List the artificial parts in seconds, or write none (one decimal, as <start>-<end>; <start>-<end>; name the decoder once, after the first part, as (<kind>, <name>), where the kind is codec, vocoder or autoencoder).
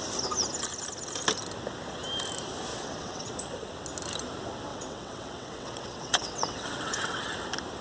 2.7-3.3 (vocoder, WaveNeXt); 4.7-7.3